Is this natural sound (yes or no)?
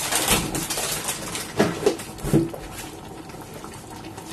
yes